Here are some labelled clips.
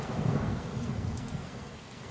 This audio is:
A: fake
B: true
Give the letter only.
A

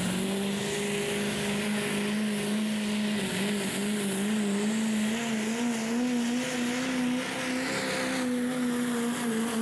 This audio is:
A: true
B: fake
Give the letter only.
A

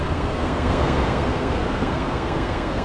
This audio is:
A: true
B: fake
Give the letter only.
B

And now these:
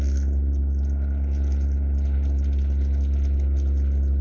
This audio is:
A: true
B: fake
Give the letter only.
A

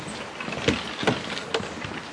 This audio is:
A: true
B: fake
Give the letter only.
A